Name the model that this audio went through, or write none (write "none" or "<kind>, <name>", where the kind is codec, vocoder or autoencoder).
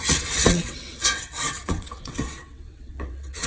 vocoder, WaveNeXt